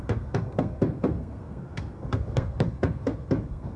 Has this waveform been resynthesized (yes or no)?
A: yes